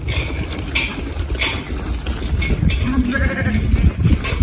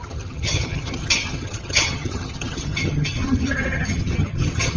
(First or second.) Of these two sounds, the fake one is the second